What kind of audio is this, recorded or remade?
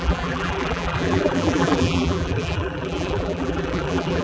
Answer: remade